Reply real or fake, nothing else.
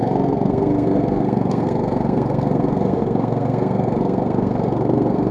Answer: fake